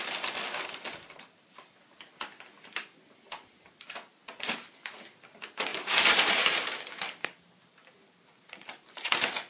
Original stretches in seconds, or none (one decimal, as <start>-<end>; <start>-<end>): 0.0-5.7; 9.1-9.5